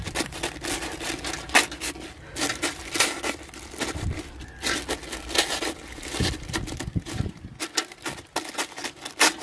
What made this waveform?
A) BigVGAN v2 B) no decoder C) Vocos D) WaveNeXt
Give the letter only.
B